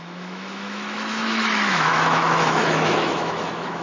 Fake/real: fake